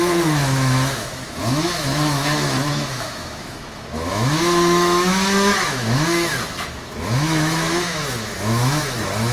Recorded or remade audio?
remade